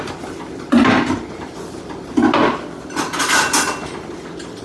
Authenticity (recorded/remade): recorded